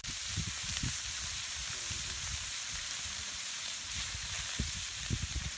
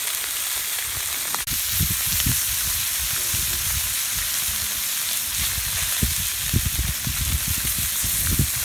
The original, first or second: second